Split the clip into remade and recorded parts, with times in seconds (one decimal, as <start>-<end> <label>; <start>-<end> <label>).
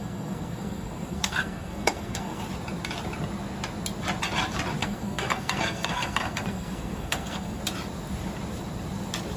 0.0-2.4 remade; 2.4-4.8 recorded; 4.8-7.6 remade; 7.6-9.4 recorded